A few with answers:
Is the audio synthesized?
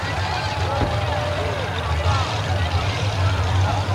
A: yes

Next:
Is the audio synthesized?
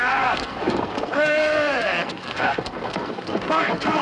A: yes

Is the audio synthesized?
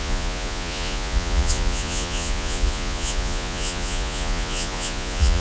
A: yes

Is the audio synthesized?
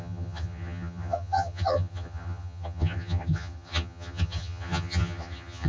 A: yes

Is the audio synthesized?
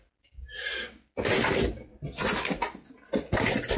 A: no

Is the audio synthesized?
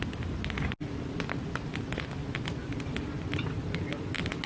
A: no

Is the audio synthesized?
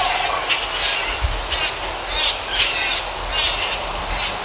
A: no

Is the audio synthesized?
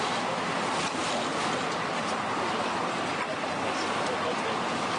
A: no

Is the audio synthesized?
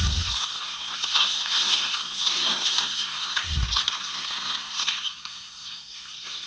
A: yes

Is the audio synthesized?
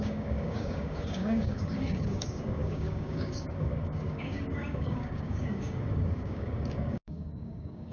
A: yes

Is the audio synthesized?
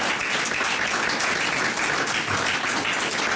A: no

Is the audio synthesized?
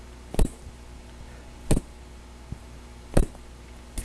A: no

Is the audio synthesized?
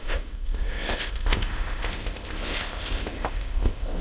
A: yes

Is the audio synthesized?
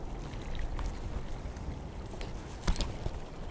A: no